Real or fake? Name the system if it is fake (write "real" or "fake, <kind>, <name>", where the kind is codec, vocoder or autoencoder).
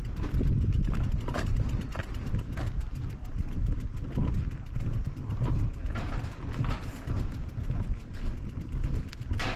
real